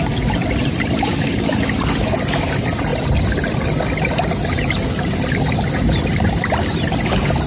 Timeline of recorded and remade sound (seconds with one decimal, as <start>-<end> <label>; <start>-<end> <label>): 0.0-2.9 remade; 2.9-6.6 recorded; 6.6-7.5 remade